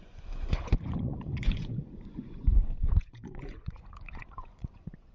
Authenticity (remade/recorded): remade